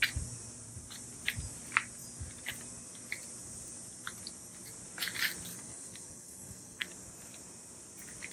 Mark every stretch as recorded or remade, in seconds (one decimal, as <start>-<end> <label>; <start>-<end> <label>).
0.0-5.5 recorded; 5.5-6.9 remade; 6.9-8.3 recorded